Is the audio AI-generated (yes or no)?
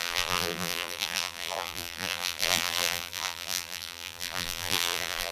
yes